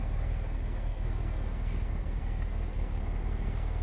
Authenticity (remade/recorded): remade